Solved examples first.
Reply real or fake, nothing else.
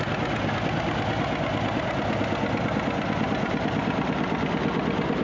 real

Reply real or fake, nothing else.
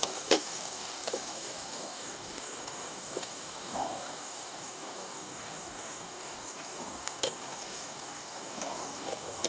fake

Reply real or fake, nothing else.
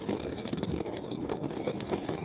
fake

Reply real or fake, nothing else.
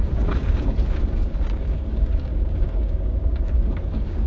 fake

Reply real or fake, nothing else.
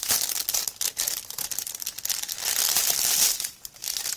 real